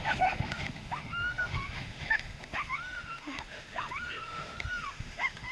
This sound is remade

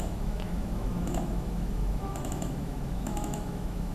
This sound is remade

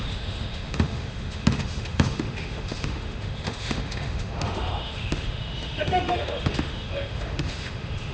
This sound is remade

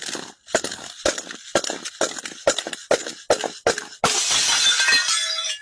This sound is recorded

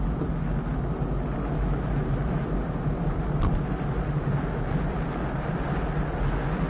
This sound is recorded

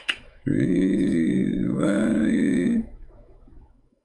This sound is remade